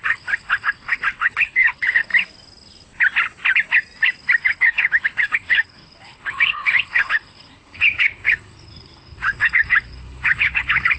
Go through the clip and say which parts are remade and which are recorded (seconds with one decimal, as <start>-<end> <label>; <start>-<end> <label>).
0.0-2.1 remade; 2.1-4.4 recorded; 4.4-11.0 remade